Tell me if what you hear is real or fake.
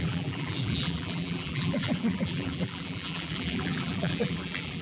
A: fake